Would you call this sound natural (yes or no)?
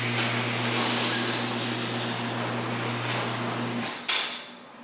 yes